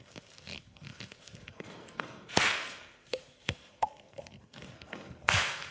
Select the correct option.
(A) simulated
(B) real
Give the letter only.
A